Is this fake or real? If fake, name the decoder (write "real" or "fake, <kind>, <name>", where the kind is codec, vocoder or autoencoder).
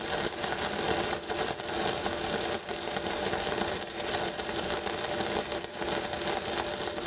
real